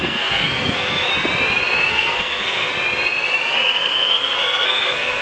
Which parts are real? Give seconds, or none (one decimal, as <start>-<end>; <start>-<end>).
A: 1.1-1.9; 2.7-3.5